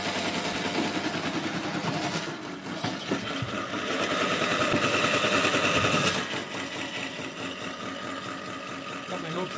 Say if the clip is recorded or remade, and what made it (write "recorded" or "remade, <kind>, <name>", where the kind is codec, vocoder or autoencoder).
recorded